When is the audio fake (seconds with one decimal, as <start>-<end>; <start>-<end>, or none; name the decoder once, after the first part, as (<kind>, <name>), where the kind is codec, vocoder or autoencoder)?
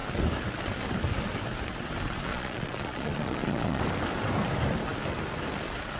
2.3-3.8 (vocoder, Vocos)